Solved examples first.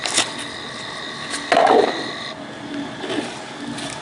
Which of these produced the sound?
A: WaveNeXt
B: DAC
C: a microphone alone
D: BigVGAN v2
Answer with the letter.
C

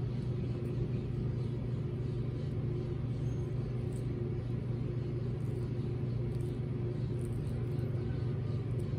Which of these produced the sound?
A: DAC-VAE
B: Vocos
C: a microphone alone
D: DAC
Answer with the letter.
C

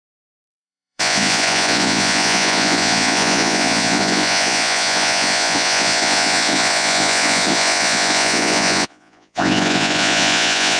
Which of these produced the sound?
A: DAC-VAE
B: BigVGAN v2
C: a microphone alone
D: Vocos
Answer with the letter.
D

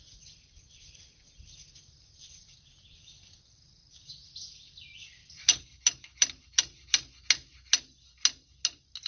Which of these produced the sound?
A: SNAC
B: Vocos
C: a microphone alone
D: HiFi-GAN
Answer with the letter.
C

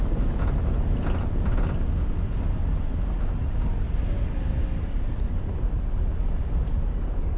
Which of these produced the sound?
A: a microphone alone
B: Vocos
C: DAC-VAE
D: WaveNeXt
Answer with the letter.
A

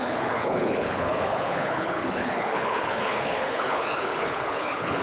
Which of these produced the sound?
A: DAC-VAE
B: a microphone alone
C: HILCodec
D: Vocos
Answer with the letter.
C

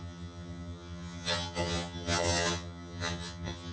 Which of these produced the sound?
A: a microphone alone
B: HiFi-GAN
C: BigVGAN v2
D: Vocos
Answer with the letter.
B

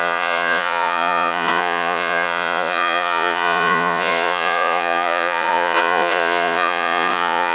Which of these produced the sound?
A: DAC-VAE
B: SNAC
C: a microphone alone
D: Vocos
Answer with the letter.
D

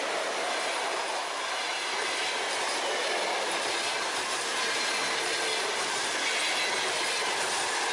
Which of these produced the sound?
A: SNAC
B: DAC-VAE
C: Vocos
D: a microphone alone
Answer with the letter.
D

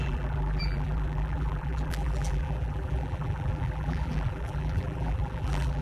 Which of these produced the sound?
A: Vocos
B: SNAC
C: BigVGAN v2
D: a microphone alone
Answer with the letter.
C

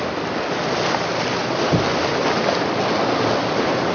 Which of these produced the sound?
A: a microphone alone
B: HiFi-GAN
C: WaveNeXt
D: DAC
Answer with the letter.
A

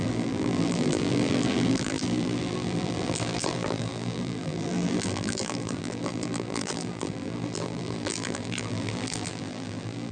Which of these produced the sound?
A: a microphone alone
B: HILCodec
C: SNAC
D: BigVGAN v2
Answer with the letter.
D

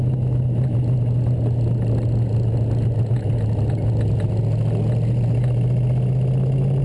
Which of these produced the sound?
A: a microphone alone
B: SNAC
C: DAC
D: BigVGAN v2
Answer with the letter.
A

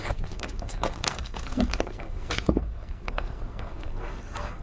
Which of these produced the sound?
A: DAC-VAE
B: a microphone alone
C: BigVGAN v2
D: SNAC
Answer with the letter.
D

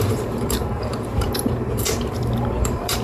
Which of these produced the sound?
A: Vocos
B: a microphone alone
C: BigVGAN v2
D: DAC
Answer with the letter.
C